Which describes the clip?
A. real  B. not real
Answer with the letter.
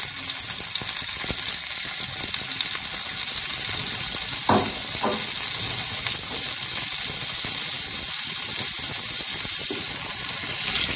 A